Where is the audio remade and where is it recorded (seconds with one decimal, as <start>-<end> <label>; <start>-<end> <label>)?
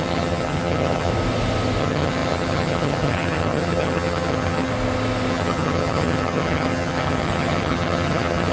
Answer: 0.0-1.1 remade; 1.1-1.8 recorded; 1.8-4.7 remade; 4.7-5.3 recorded; 5.3-8.5 remade